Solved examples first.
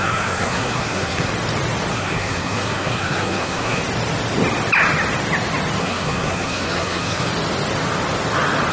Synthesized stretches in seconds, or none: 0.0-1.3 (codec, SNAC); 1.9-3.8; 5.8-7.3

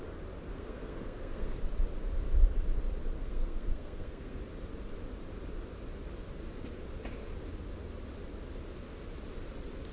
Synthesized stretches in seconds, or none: 0.5-1.6 (codec, SNAC); 3.2-4.4

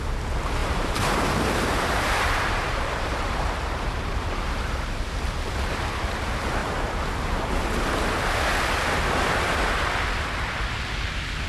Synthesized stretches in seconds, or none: 0.6-4.6 (vocoder, BigVGAN v2)

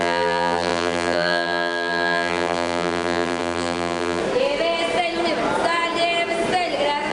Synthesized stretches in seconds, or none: 0.0-4.2 (vocoder, BigVGAN v2)

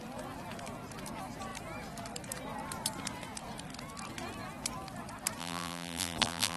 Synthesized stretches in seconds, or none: 5.4-6.6 (vocoder, BigVGAN v2)

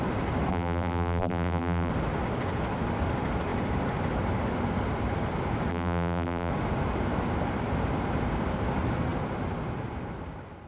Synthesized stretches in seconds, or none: 0.5-1.9 (vocoder, BigVGAN v2); 5.7-6.5

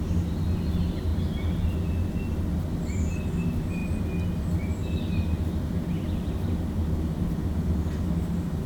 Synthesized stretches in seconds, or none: none